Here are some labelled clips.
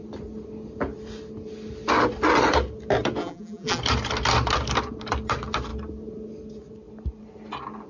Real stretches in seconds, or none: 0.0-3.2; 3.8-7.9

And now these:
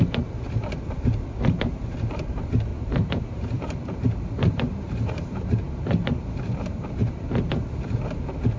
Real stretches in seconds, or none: 0.0-2.7; 7.1-8.6

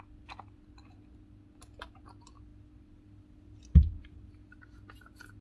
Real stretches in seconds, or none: 0.0-5.4

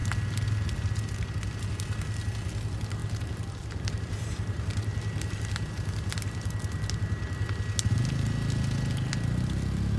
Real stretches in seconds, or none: 0.0-3.0; 5.7-10.0